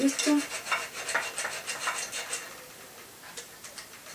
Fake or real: real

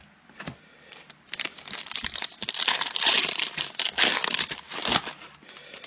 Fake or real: real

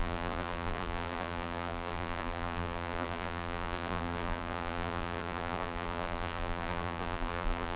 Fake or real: fake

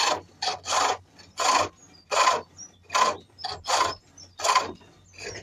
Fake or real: real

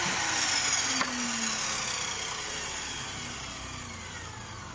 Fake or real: real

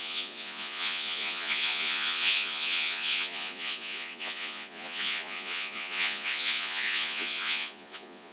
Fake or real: fake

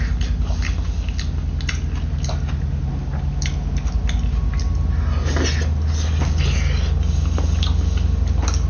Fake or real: real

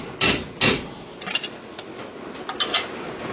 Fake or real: real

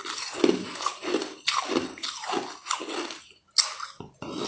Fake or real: real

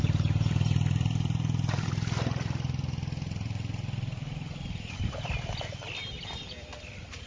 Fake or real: fake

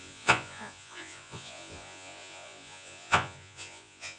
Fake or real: fake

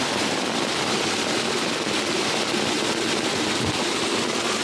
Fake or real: real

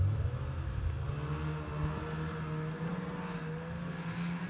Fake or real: real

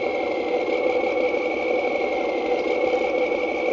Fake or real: real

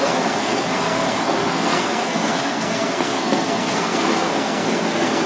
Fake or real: fake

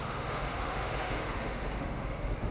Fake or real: fake